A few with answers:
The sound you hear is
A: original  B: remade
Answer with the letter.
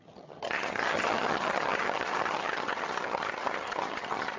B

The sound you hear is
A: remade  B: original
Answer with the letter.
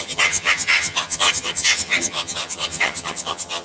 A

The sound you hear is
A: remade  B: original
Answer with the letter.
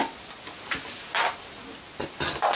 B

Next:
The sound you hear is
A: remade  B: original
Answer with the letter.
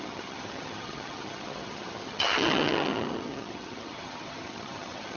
A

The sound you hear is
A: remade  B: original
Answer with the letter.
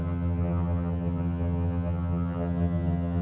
A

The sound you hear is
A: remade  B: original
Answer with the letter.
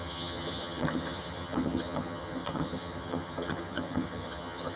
A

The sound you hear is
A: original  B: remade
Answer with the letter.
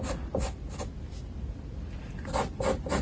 A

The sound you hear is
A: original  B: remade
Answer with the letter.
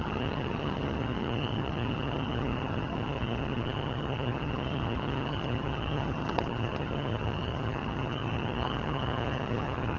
B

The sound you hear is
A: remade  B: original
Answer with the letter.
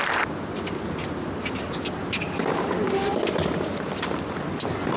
B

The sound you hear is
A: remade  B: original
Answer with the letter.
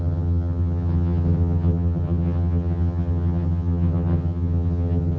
A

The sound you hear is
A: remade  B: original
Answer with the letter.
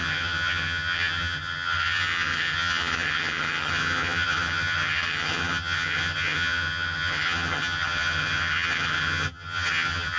A